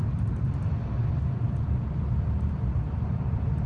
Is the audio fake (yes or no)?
no